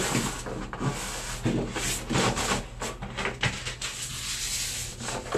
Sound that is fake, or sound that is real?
real